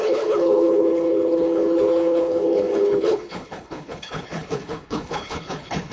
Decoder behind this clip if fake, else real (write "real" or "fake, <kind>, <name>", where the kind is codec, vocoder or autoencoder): fake, codec, HILCodec